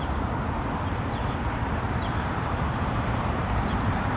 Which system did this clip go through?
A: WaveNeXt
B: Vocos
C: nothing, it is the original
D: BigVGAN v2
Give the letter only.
D